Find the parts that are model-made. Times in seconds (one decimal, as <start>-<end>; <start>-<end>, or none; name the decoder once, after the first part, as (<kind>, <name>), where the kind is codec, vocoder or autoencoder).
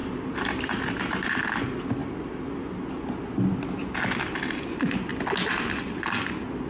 5.1-6.0 (vocoder, BigVGAN v2)